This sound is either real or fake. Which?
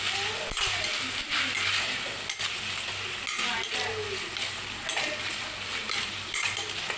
real